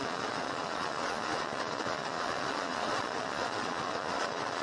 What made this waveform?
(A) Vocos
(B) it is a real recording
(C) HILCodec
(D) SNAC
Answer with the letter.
A